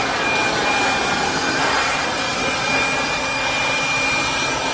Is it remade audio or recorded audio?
recorded